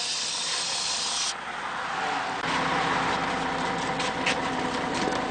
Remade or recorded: recorded